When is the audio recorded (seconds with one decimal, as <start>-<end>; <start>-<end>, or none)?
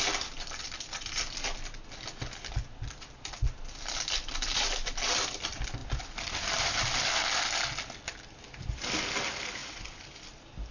0.0-5.8; 7.0-9.6